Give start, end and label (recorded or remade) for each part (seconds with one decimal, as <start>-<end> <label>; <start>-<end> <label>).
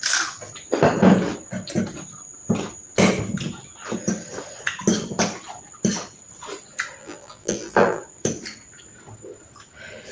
0.0-7.0 recorded; 7.0-8.0 remade; 8.0-10.1 recorded